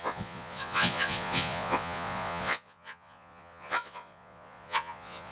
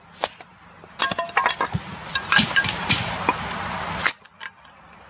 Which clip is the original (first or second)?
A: second